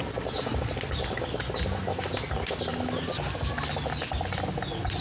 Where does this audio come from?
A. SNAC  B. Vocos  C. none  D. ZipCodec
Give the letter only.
C